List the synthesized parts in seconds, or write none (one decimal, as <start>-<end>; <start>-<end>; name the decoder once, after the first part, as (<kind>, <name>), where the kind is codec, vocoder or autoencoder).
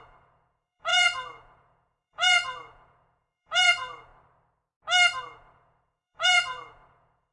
0.0-4.1 (vocoder, Vocos); 5.2-7.3